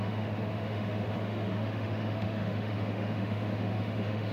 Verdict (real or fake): fake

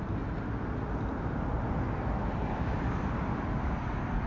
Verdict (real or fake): real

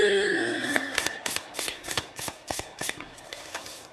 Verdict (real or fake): fake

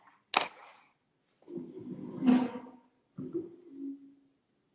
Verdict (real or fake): real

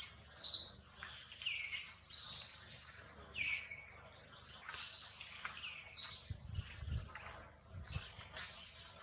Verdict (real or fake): real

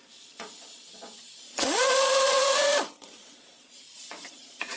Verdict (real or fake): fake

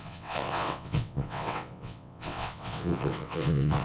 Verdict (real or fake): fake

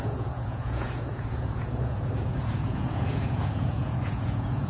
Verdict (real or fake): fake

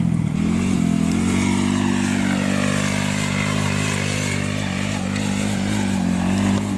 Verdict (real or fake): real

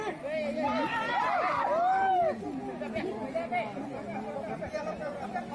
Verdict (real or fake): real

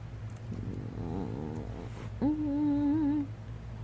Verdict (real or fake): real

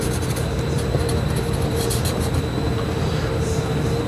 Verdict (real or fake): real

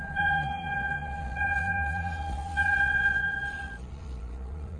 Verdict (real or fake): fake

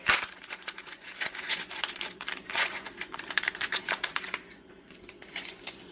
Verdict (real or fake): fake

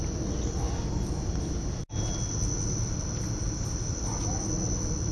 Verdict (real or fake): real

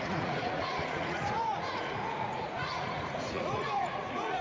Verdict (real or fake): fake